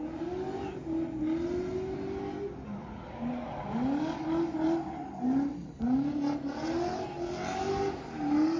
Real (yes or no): yes